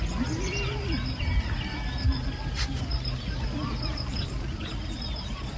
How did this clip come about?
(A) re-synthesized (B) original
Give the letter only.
B